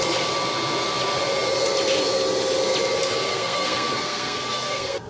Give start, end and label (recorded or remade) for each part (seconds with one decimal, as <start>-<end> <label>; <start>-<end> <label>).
0.0-3.3 recorded; 3.3-5.1 remade